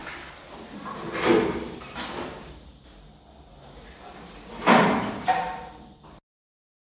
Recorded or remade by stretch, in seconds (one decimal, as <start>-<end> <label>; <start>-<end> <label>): 0.0-7.0 recorded